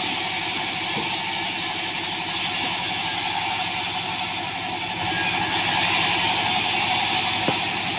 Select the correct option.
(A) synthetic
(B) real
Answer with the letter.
B